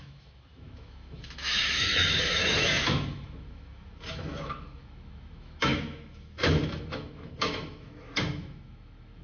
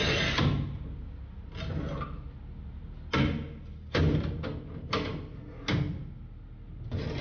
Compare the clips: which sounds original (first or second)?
second